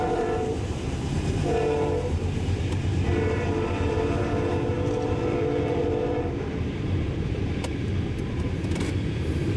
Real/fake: fake